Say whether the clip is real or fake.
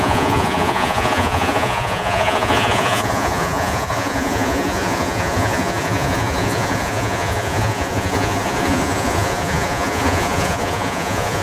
fake